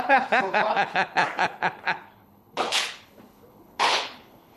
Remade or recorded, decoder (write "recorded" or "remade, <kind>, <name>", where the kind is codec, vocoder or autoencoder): remade, codec, HILCodec